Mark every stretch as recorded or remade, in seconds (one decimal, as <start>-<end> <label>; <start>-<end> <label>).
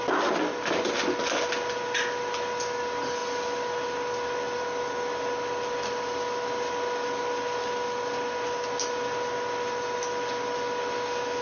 0.0-11.4 recorded